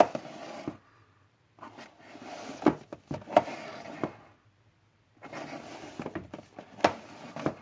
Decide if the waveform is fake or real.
real